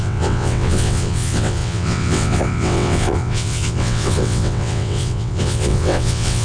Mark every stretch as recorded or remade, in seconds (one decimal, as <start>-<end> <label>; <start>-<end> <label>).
0.0-6.4 remade